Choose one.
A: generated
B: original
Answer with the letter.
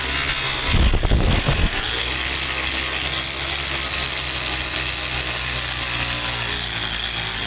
B